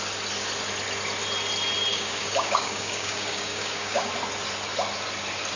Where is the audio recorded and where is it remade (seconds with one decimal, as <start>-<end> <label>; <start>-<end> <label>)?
0.0-1.9 recorded; 1.9-4.1 remade; 4.1-5.6 recorded